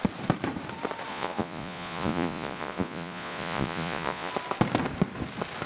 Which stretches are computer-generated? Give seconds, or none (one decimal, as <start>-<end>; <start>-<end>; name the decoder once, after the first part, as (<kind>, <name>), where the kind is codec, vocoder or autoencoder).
1.1-4.3 (vocoder, Vocos)